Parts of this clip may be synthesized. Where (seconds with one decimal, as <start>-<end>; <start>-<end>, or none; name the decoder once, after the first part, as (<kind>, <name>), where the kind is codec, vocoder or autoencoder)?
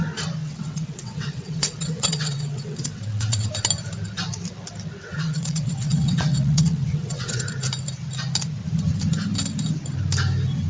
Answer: 0.4-3.5 (vocoder, WaveNeXt); 5.1-7.4